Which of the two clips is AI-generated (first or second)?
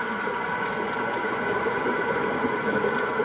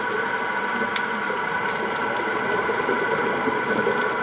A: first